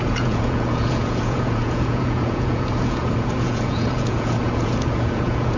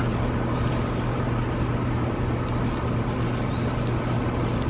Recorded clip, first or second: second